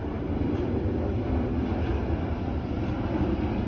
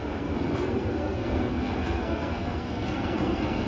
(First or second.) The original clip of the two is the first